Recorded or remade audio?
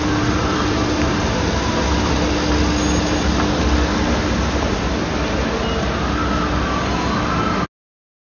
recorded